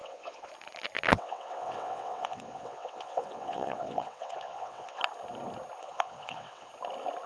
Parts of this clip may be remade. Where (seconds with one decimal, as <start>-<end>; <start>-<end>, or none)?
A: 0.0-0.5; 1.1-5.0; 5.8-6.7